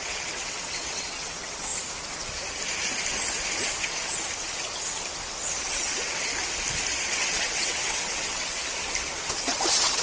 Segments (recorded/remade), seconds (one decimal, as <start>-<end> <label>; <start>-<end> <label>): 0.0-1.7 remade; 1.7-5.6 recorded; 5.6-6.3 remade; 6.3-7.0 recorded; 7.0-8.6 remade; 8.6-9.4 recorded; 9.4-10.0 remade